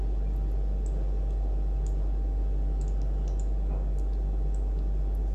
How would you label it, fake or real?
real